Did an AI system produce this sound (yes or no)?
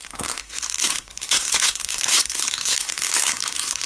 yes